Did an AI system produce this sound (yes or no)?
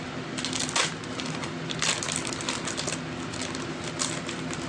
no